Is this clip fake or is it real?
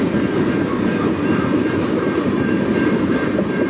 fake